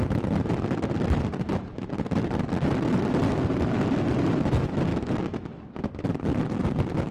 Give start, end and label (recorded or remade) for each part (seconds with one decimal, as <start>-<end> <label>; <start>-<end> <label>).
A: 0.0-4.9 recorded; 4.9-5.8 remade; 5.8-7.1 recorded